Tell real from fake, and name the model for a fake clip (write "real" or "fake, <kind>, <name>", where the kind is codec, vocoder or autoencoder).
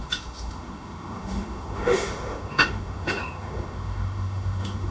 fake, autoencoder, DAC-VAE